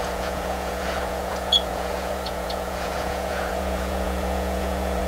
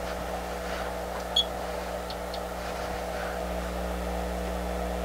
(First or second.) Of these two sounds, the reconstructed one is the first